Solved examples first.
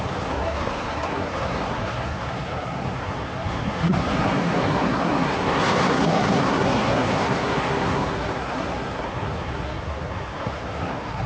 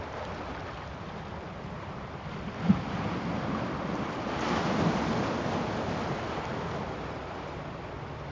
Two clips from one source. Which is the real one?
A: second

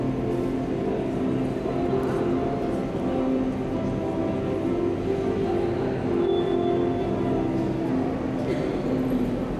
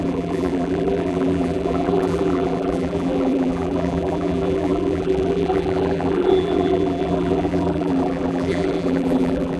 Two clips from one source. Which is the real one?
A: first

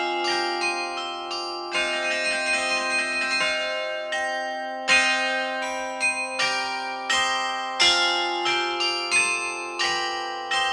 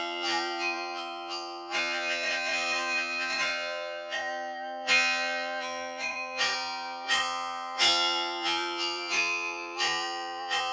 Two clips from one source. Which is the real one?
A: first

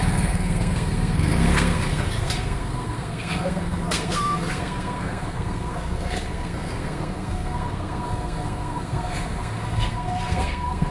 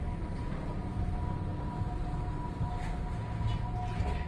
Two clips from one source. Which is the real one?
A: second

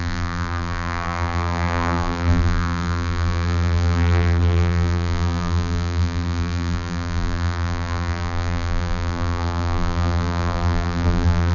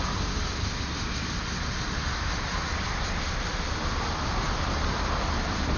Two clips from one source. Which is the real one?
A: second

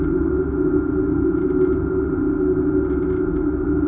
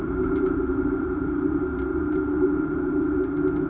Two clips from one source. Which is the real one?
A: first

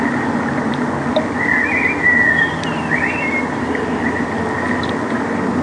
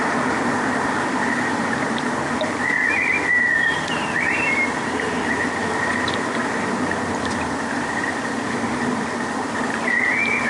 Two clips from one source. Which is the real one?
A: first